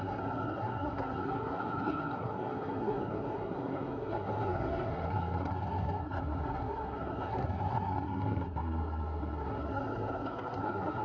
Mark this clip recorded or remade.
remade